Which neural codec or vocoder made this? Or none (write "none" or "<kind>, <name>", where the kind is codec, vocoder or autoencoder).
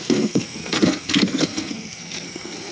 codec, SNAC